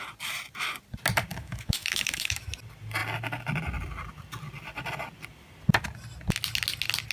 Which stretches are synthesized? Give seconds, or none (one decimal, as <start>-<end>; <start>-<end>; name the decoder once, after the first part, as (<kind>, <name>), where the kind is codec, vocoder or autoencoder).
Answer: 1.3-2.5 (autoencoder, DAC-VAE)